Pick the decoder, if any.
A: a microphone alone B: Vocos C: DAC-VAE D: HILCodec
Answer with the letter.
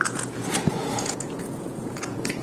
B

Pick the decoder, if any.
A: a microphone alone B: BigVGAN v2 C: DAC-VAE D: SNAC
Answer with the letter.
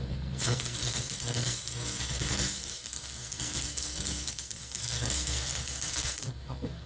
D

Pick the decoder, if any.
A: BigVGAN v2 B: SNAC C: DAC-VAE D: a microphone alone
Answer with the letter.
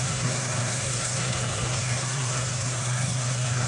B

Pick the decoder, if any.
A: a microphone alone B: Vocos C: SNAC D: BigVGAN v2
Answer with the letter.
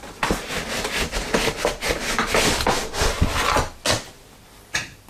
A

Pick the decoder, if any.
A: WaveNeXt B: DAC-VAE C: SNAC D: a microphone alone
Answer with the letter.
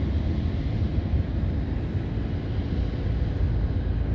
D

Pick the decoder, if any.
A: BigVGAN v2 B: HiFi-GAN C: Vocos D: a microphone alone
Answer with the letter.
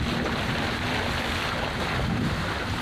D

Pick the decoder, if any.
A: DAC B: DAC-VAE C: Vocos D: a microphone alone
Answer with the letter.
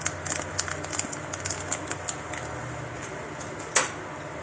D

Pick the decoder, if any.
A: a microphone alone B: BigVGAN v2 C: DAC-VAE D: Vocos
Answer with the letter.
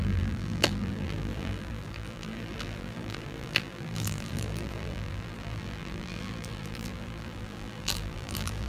B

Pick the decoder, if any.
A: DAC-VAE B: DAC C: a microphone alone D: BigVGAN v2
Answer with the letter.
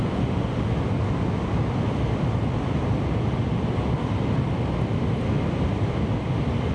C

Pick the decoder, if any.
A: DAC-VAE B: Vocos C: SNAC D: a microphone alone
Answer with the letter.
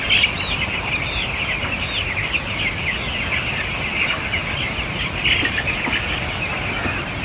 D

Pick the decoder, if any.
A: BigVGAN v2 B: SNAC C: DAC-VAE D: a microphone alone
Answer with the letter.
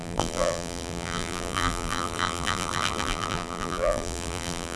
A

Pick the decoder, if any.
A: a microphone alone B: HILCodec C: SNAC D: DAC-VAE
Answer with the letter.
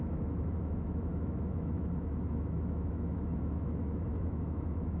D